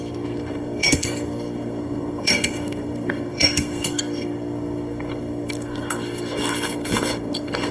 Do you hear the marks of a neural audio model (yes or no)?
yes